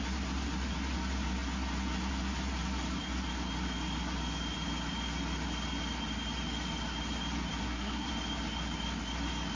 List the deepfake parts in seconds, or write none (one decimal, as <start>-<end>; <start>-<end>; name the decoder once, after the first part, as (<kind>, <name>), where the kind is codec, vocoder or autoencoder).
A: 7.6-8.1 (codec, SNAC)